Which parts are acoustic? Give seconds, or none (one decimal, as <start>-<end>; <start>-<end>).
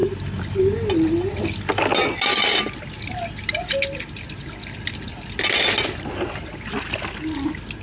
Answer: 0.0-7.8